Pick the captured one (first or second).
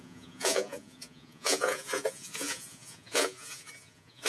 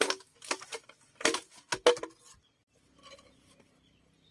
second